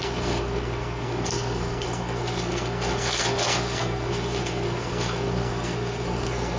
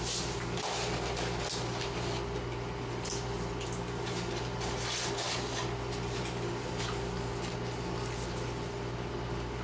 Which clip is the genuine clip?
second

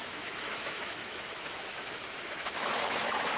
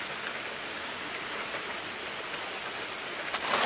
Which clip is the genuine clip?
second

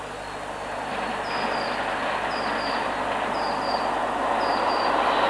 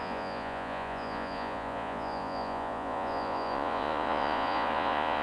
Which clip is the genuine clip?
first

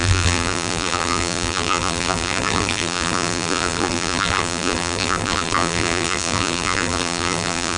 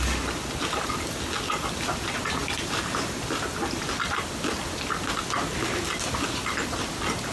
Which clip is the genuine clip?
second